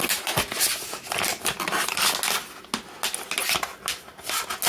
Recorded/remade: recorded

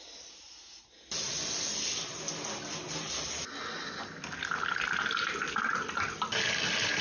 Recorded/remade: recorded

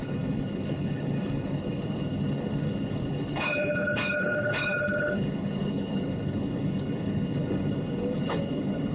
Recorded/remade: remade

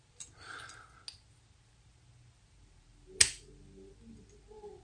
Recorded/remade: recorded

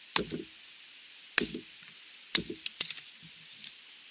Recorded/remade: recorded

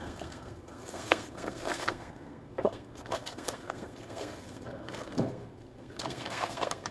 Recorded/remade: remade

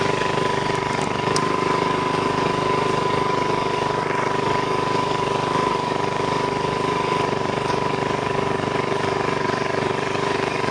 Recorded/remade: remade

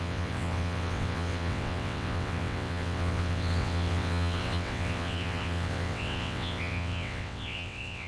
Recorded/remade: remade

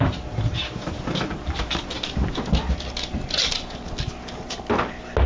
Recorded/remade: recorded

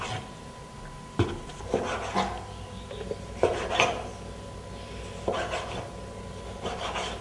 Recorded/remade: recorded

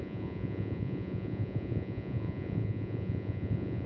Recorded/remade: remade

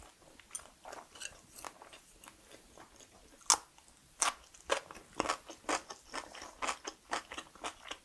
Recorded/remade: recorded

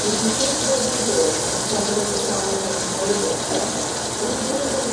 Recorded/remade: remade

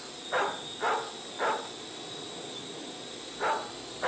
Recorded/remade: recorded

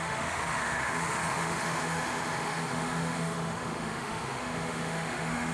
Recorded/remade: remade